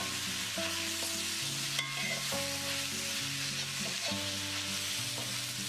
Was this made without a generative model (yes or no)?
yes